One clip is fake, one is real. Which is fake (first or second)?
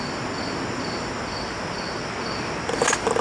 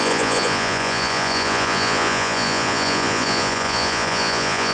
second